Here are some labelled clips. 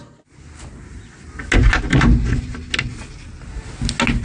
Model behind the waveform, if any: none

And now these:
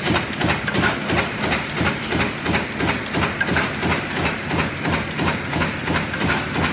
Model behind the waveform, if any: none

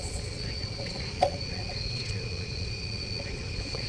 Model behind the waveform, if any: vocoder, Vocos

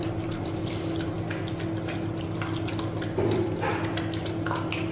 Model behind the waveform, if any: none